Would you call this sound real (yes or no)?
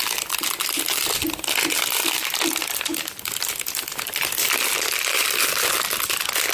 yes